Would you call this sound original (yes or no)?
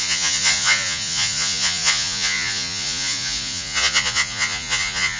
no